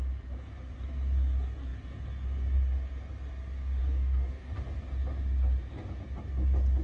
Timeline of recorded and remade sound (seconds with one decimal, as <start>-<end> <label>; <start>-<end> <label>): 0.0-3.8 recorded; 3.8-4.5 remade; 4.5-6.8 recorded